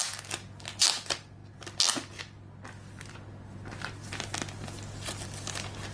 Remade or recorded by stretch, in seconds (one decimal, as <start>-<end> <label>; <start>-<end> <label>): 0.0-5.9 recorded